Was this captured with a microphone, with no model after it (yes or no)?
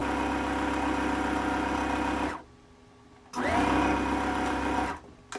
yes